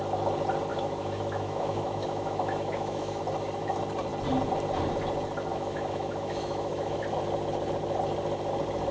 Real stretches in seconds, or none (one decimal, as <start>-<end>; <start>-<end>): 0.0-0.7; 3.2-5.5; 7.0-8.9